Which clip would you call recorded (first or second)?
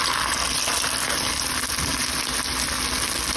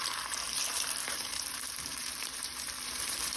first